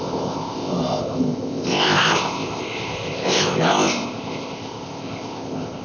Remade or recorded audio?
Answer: remade